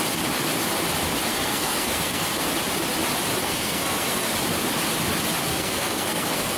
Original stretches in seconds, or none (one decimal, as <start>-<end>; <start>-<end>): 0.0-1.3; 2.5-3.4; 4.3-5.5

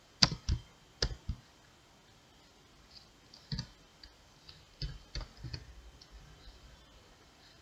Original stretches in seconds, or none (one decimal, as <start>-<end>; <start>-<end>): 0.0-7.6

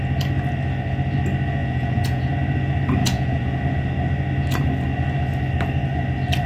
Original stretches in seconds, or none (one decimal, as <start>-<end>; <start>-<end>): 0.0-1.6; 2.3-3.0; 3.6-6.5

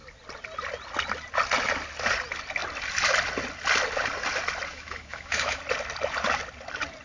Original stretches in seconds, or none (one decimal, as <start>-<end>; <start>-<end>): 0.0-4.7; 5.6-7.0